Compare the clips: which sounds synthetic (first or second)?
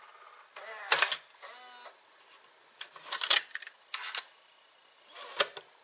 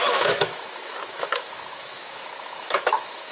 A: second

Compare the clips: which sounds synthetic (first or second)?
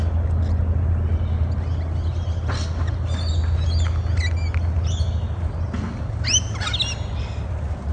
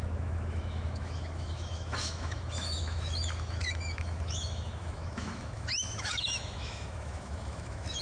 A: second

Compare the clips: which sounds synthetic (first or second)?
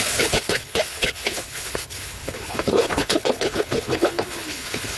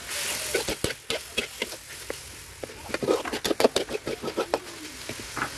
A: first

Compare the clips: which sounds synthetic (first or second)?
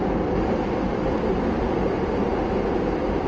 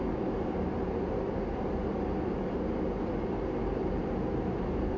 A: first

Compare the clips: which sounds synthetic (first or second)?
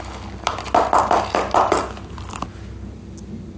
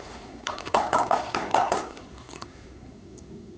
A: second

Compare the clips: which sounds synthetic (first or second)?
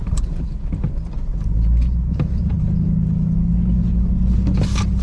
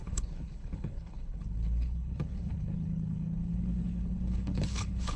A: second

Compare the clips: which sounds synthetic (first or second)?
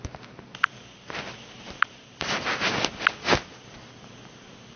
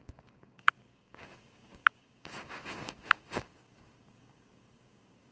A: second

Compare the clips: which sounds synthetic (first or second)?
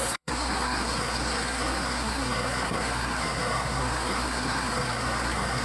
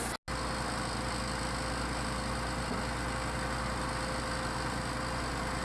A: first